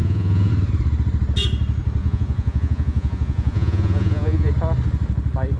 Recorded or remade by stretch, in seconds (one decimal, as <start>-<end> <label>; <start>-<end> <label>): 0.0-0.5 remade; 0.5-2.0 recorded; 2.0-4.5 remade; 4.5-5.6 recorded